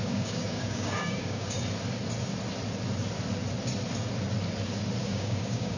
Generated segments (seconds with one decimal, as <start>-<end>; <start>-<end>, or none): 0.0-1.6; 5.0-5.8